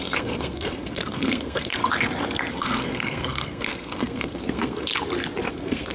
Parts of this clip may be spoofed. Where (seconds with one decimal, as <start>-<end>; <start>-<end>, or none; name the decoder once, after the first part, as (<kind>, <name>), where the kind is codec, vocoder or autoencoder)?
0.0-1.7 (codec, SNAC); 2.5-4.9; 5.5-5.9